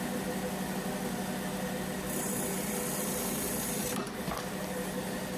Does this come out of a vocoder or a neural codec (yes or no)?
no